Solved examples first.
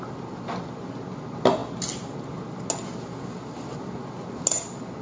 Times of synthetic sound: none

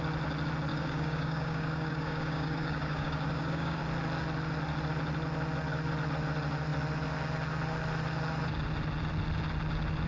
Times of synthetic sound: 0.7-3.8 (codec, DAC)